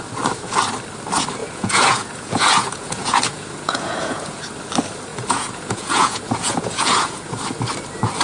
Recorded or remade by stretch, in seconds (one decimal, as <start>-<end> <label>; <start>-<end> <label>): 0.0-1.4 recorded; 1.4-4.4 remade; 4.4-5.1 recorded; 5.1-7.4 remade; 7.4-8.2 recorded